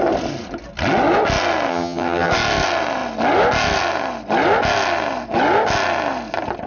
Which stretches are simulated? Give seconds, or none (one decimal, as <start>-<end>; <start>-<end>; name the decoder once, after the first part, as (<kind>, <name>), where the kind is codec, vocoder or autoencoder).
1.7-2.3 (vocoder, HiFi-GAN)